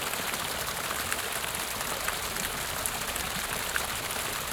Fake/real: real